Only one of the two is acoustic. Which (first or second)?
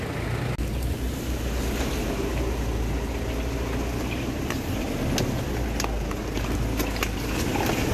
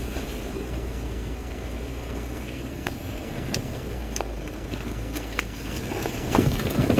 first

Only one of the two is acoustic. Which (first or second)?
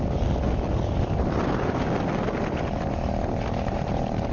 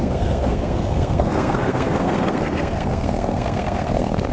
first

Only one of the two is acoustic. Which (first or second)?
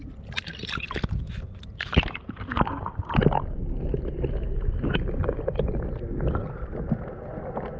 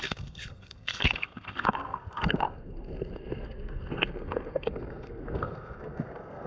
first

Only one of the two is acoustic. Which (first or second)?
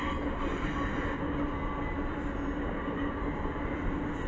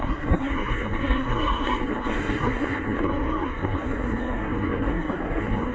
first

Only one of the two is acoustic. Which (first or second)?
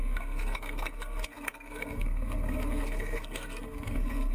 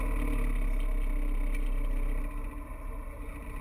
second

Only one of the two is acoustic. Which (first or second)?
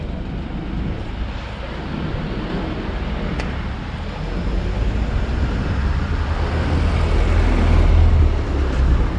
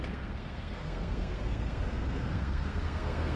first